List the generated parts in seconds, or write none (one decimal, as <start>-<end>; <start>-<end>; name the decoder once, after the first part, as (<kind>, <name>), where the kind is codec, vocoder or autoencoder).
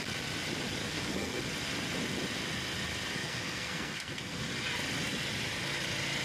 0.8-1.4 (codec, SNAC); 3.2-4.4